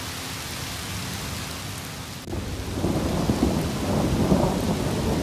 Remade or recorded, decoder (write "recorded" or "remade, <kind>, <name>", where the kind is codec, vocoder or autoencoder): recorded